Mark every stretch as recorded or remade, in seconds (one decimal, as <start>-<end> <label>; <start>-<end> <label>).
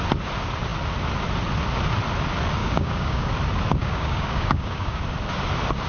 0.0-2.6 recorded; 2.6-3.3 remade; 3.3-3.8 recorded; 3.8-5.0 remade; 5.0-5.9 recorded